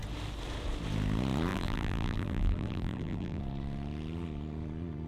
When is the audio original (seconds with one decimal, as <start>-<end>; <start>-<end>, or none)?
0.0-1.5; 3.4-5.1